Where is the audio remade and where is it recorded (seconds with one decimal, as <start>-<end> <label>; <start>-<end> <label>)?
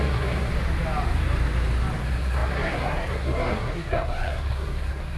0.0-0.5 remade; 0.5-2.0 recorded; 2.0-5.2 remade